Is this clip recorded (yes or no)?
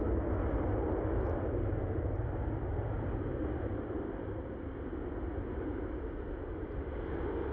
yes